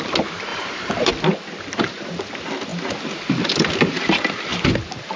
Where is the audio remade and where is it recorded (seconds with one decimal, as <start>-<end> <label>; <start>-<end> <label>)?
0.0-0.5 recorded; 0.5-1.1 remade; 1.1-5.2 recorded